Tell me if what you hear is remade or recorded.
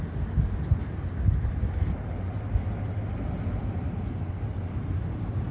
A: recorded